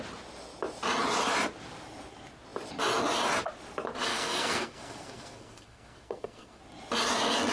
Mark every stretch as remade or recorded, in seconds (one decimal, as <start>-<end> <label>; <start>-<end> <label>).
0.0-4.1 recorded; 4.1-6.6 remade; 6.6-7.5 recorded